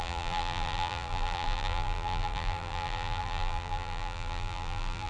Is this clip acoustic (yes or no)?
no